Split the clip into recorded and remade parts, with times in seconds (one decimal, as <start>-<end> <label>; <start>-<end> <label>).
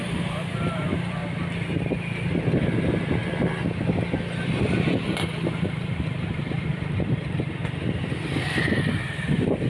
0.0-1.2 remade; 1.2-2.6 recorded; 2.6-3.2 remade; 3.2-5.5 recorded; 5.5-7.6 remade; 7.6-8.8 recorded; 8.8-9.7 remade